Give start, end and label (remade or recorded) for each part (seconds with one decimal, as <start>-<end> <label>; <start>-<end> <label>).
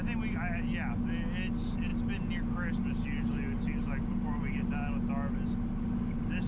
0.0-6.5 recorded